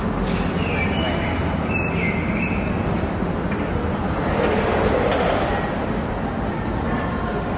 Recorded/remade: recorded